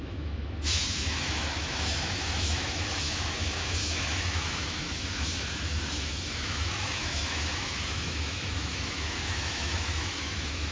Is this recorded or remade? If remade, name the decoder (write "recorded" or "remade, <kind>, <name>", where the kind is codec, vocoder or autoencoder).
remade, autoencoder, DAC-VAE